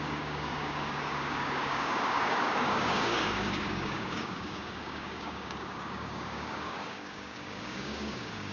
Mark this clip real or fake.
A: fake